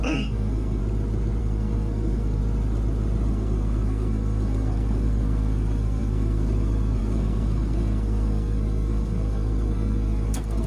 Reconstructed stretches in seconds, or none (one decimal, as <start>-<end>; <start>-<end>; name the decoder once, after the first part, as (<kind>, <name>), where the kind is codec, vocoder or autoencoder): 0.0-0.8 (codec, SNAC); 1.4-2.4; 3.3-10.7